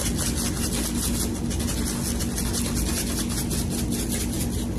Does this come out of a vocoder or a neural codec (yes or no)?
no